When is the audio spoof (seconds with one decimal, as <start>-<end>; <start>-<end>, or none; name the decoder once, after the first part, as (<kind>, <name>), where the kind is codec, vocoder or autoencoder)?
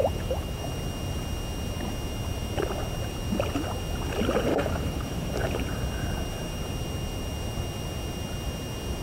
0.0-0.6 (autoencoder, DAC-VAE); 4.5-5.3